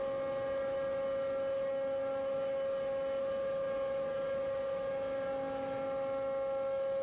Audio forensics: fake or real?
real